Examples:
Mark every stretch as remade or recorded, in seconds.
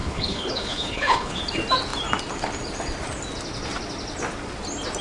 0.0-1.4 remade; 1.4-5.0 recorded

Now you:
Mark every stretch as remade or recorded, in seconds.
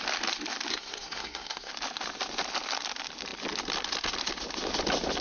0.0-0.7 recorded; 0.7-1.7 remade; 1.7-5.2 recorded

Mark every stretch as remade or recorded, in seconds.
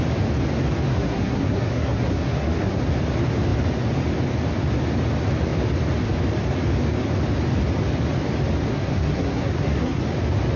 0.0-0.9 recorded; 0.9-2.8 remade; 2.8-8.7 recorded; 8.7-10.0 remade; 10.0-10.6 recorded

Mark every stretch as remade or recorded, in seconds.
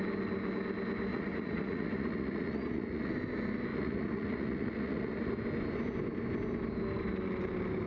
0.0-1.1 recorded; 1.1-3.1 remade; 3.1-3.7 recorded; 3.7-5.3 remade; 5.3-7.9 recorded